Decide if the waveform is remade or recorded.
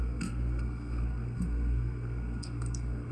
remade